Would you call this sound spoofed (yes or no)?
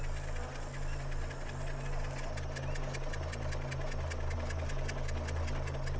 no